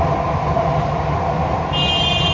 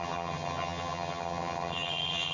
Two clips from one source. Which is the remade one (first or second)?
second